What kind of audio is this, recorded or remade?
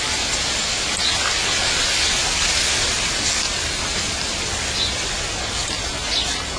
recorded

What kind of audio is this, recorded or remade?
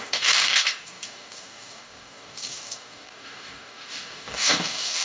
remade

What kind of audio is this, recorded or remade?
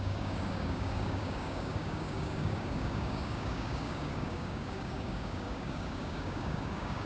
remade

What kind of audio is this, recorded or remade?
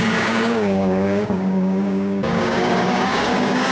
remade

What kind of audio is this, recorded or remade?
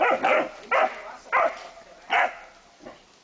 recorded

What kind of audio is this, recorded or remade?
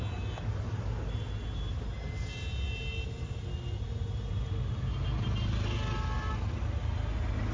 recorded